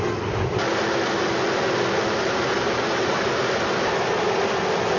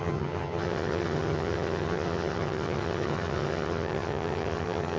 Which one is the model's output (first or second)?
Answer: second